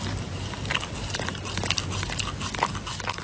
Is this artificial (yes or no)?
no